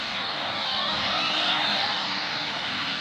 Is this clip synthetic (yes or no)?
yes